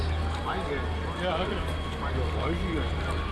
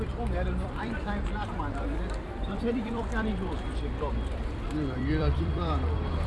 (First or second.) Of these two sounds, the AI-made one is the second